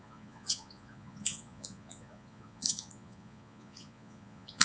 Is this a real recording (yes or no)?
no